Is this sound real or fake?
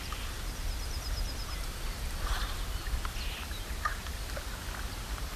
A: real